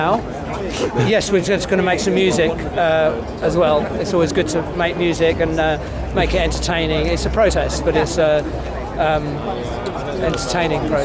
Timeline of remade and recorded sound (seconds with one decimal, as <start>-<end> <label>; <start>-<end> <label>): 0.0-11.0 recorded